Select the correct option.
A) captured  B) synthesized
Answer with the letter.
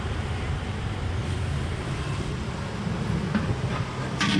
A